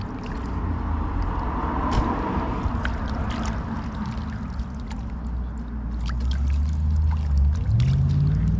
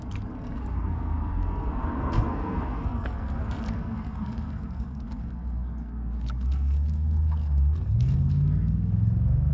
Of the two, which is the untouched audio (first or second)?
first